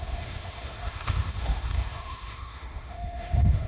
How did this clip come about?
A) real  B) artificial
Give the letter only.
B